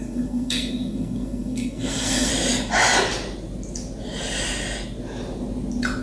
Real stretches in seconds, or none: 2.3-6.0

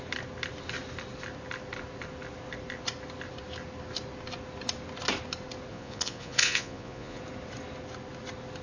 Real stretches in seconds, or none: 0.0-5.7; 7.2-8.6

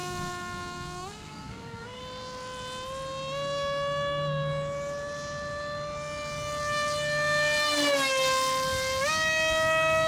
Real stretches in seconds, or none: 2.0-10.1

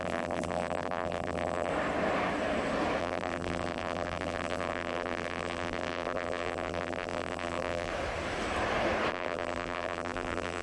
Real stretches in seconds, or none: 1.7-3.0; 7.9-9.1

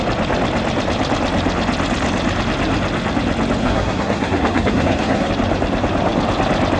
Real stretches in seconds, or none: 0.0-3.6; 5.3-6.8

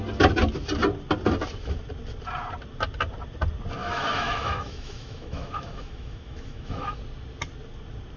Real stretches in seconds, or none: 0.0-3.8; 7.0-8.2

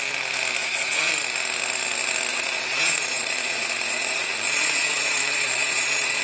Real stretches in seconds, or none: 0.0-0.6; 1.1-2.3